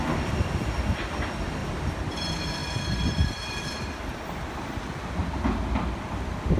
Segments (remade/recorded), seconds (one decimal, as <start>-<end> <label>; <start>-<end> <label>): 0.0-1.6 recorded; 1.6-2.1 remade; 2.1-2.6 recorded; 2.6-4.5 remade; 4.5-5.2 recorded; 5.2-6.6 remade